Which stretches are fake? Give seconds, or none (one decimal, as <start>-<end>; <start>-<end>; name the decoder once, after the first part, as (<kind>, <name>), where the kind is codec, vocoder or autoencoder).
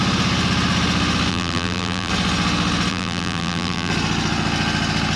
1.3-2.1 (vocoder, BigVGAN v2); 2.9-3.9